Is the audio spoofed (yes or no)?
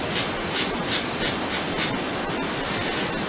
no